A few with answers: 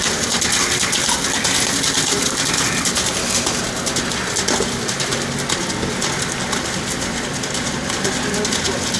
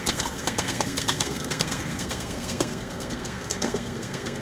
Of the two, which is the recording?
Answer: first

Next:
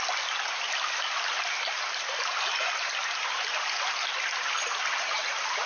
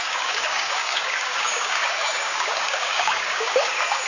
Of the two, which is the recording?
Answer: first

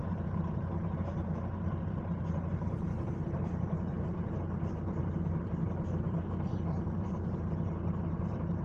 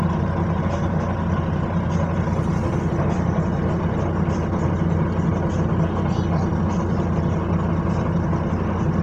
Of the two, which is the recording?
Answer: second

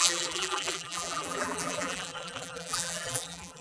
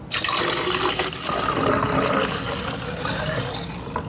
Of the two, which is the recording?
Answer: second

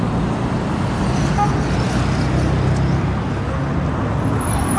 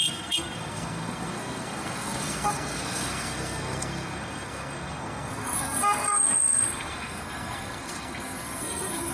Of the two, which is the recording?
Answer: first